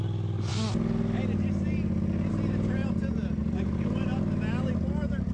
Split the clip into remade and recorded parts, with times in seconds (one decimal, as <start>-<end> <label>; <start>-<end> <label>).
0.0-3.4 recorded; 3.4-4.2 remade; 4.2-5.3 recorded